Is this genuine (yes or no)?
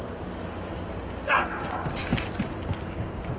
yes